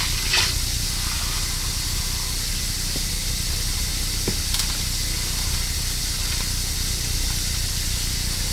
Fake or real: real